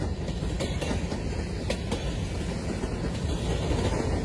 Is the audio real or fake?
real